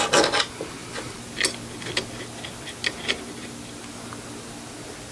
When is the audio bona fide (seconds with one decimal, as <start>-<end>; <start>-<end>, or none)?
0.0-5.1